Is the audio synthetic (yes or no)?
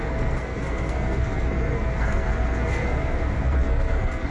yes